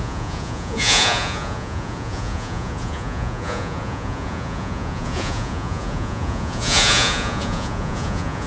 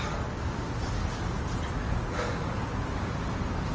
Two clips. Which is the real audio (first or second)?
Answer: second